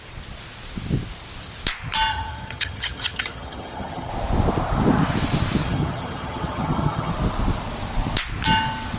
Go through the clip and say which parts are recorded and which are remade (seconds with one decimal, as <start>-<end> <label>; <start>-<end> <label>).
0.0-2.1 recorded; 2.1-4.1 remade; 4.1-5.6 recorded; 5.6-7.1 remade; 7.1-9.0 recorded